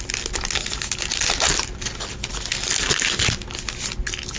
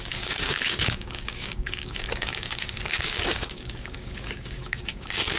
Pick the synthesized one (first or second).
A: second